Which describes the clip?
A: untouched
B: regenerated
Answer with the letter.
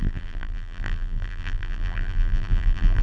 B